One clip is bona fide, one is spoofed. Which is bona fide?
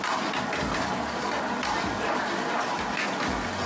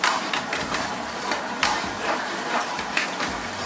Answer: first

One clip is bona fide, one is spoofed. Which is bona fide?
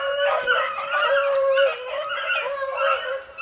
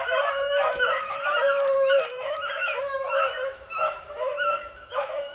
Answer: first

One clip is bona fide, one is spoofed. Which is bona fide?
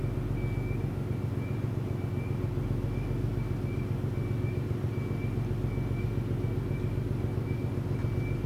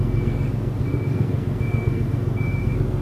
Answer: first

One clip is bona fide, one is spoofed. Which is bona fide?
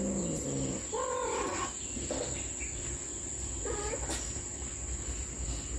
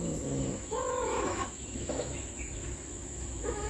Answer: first